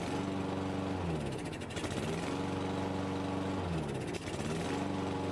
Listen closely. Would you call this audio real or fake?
real